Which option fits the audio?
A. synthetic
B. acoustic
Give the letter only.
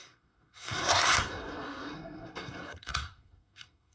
A